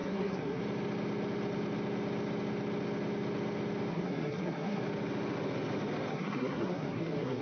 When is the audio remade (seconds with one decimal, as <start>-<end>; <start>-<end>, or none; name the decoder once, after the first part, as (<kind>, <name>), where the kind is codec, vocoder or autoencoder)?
0.0-0.6 (codec, SNAC); 3.9-4.8; 6.1-7.4